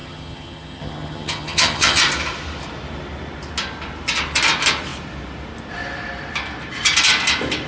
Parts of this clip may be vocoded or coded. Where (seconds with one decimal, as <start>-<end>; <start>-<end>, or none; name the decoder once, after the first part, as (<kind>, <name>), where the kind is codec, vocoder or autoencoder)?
0.0-2.0 (vocoder, HiFi-GAN)